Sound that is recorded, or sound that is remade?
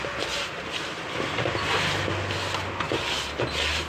recorded